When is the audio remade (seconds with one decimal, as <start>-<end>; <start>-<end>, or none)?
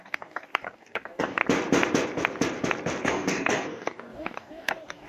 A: 0.0-1.4; 3.0-5.1